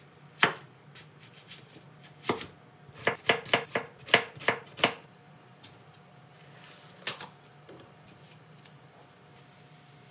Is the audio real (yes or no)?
yes